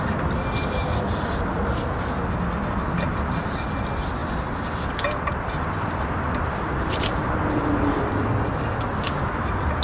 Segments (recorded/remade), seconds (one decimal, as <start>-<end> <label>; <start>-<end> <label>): 0.0-0.8 recorded; 0.8-1.6 remade; 1.6-4.2 recorded; 4.2-8.3 remade; 8.3-9.8 recorded